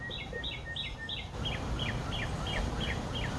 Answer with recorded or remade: recorded